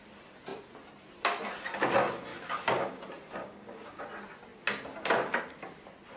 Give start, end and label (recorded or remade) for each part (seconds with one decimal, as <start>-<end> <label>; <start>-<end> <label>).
0.0-2.3 recorded; 2.3-3.0 remade; 3.0-3.4 recorded; 3.4-4.0 remade; 4.0-6.2 recorded